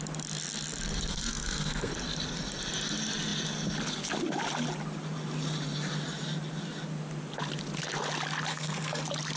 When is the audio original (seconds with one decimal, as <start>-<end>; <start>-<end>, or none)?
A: 0.0-1.1; 1.9-8.5; 9.0-9.4